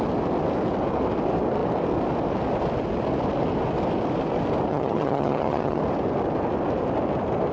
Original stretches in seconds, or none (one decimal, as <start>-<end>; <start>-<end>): 0.0-4.7; 5.8-7.5